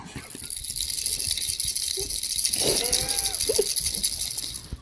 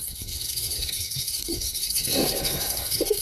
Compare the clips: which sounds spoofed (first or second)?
second